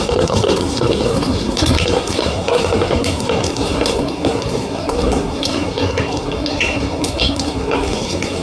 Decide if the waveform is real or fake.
fake